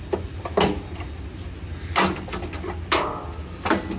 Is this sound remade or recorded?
recorded